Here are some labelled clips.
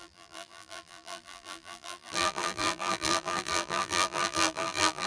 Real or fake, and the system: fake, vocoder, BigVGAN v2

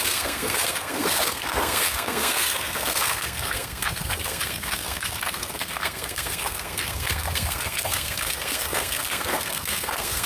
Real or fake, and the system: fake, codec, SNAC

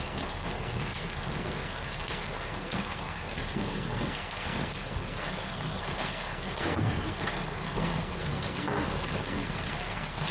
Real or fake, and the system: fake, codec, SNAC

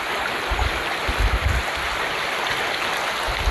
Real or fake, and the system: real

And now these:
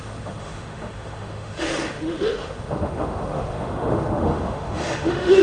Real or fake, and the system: fake, autoencoder, DAC-VAE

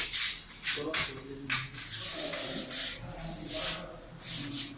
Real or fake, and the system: real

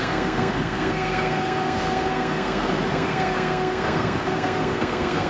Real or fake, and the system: fake, codec, SNAC